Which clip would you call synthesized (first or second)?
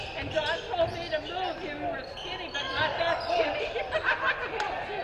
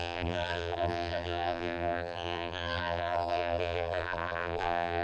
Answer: second